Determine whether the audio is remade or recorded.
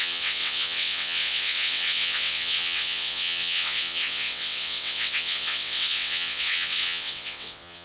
remade